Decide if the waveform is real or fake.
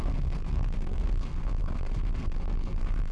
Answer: fake